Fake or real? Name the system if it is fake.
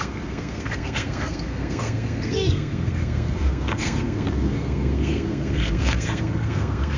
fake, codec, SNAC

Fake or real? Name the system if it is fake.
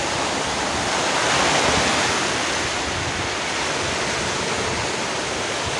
real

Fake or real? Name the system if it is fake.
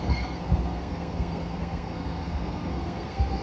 fake, codec, SNAC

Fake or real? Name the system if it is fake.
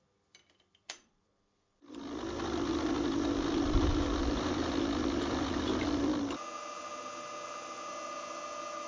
fake, vocoder, BigVGAN v2